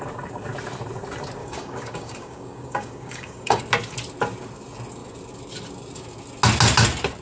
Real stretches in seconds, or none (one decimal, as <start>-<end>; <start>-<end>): 0.0-1.4; 3.6-7.2